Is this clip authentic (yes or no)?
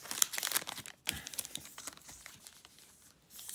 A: yes